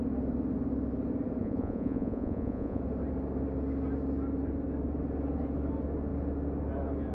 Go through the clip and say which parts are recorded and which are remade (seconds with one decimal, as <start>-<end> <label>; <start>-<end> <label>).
0.0-1.4 recorded; 1.4-2.8 remade; 2.8-7.1 recorded